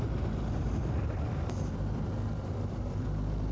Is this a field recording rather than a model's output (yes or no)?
no